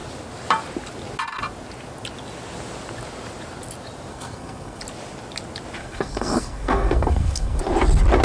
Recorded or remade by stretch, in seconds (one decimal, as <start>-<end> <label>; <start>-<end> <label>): 0.0-4.1 recorded; 4.1-4.8 remade; 4.8-5.8 recorded; 5.8-7.6 remade; 7.6-8.2 recorded

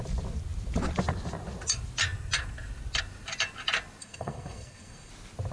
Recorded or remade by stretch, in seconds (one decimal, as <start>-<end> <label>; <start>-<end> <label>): 0.0-4.0 recorded; 4.0-5.1 remade; 5.1-5.5 recorded

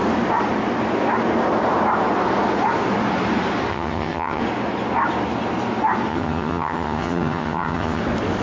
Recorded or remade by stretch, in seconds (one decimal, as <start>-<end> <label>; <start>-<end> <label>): 0.0-3.7 recorded; 3.7-4.4 remade; 4.4-6.1 recorded; 6.1-8.0 remade; 8.0-8.4 recorded

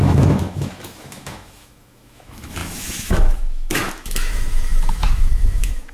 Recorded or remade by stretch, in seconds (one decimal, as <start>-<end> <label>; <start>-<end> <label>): 0.0-5.9 remade

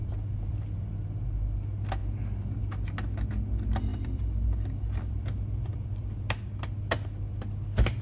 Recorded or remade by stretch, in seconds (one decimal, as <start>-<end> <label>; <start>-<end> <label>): 0.0-0.9 remade; 0.9-3.9 recorded; 3.9-6.6 remade; 6.6-8.0 recorded

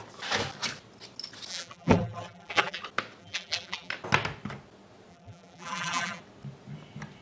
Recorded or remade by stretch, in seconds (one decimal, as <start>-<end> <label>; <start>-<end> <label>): 0.0-1.5 recorded; 1.5-2.8 remade; 2.8-3.2 recorded; 3.2-3.9 remade; 3.9-5.1 recorded; 5.1-6.2 remade; 6.2-7.2 recorded